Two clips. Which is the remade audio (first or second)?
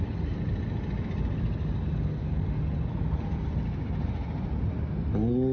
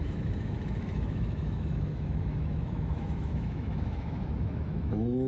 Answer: second